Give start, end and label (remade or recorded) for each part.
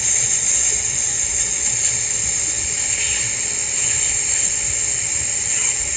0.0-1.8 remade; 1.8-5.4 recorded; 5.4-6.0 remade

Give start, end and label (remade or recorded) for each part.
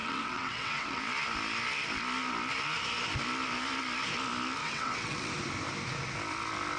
0.0-1.0 remade; 1.0-4.6 recorded; 4.6-5.3 remade; 5.3-6.8 recorded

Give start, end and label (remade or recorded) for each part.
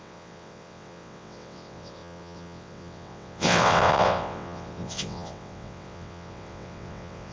0.0-7.3 remade